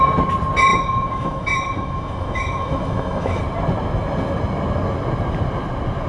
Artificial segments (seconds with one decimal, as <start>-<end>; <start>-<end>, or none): 0.7-3.4